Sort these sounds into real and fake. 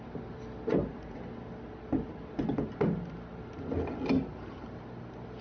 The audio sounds real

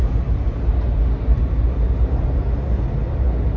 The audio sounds real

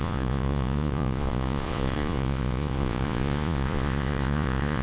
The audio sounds fake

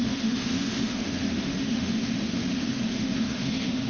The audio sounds fake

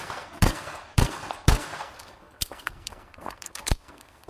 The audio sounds fake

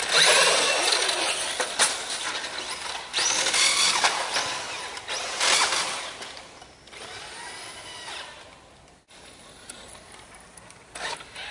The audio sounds real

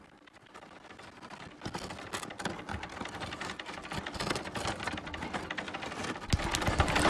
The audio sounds real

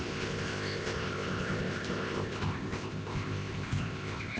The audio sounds fake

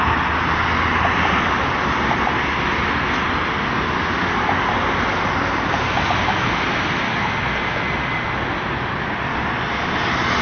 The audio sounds real